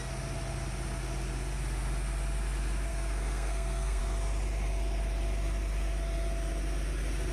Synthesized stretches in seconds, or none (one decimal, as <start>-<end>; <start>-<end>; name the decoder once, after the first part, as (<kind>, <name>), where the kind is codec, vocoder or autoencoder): 2.9-4.0 (codec, SNAC)